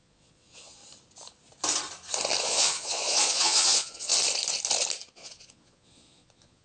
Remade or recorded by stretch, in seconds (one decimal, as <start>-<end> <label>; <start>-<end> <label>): 0.0-0.8 remade; 0.8-2.4 recorded; 2.4-4.1 remade; 4.1-5.1 recorded; 5.1-6.6 remade